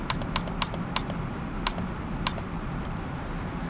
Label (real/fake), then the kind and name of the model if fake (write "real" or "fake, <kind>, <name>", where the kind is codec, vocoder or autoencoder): real